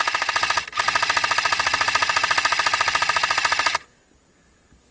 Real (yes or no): yes